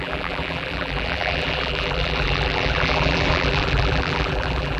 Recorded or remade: remade